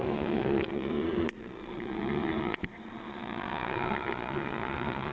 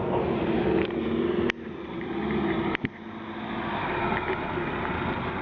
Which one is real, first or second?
second